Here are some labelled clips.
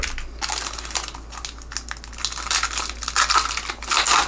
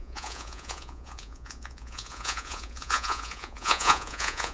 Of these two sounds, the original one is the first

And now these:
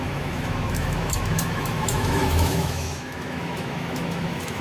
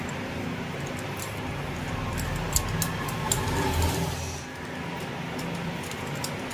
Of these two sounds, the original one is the second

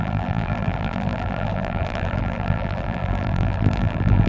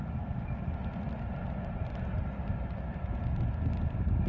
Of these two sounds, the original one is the second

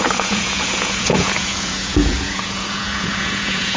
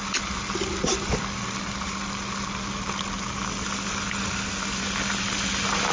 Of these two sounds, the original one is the second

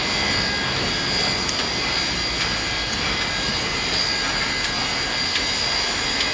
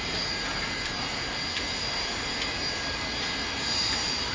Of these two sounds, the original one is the first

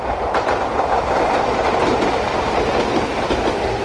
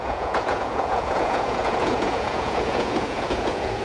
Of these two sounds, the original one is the first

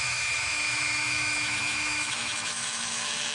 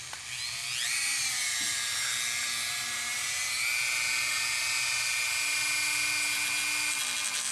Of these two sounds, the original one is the second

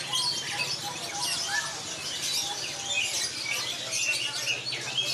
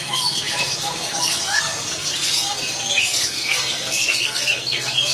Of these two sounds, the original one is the first